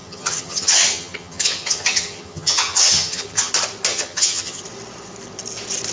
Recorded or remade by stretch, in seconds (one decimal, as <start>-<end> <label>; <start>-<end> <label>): 0.0-3.5 remade; 3.5-3.9 recorded; 3.9-4.6 remade; 4.6-5.9 recorded

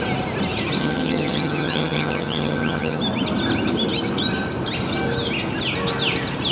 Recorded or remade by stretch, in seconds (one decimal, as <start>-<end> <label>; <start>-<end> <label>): 0.0-0.8 recorded; 0.8-3.0 remade; 3.0-6.5 recorded

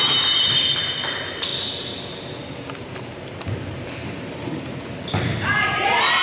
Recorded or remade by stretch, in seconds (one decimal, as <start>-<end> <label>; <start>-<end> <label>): 0.0-6.2 recorded

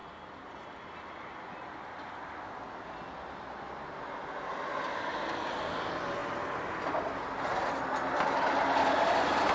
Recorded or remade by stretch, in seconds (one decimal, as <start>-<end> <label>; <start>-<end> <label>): 0.0-9.5 recorded

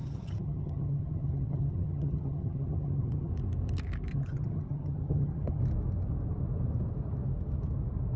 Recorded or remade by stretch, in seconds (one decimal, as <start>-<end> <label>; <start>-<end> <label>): 0.0-3.3 remade; 3.3-4.1 recorded; 4.1-5.6 remade; 5.6-8.2 recorded

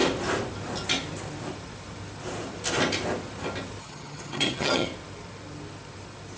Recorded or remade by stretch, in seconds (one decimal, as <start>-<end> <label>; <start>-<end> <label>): 0.0-3.8 recorded; 3.8-4.9 remade; 4.9-6.4 recorded

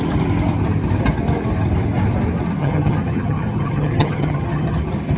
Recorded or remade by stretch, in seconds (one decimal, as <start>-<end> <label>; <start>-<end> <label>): 0.0-2.6 recorded; 2.6-4.8 remade; 4.8-5.2 recorded

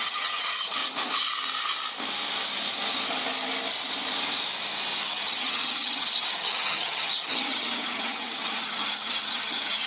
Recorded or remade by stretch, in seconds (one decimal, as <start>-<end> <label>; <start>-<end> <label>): 0.0-0.8 remade; 0.8-5.0 recorded; 5.0-9.9 remade